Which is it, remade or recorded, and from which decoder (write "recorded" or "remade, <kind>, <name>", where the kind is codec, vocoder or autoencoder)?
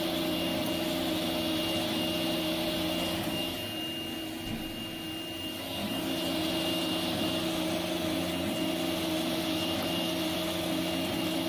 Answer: recorded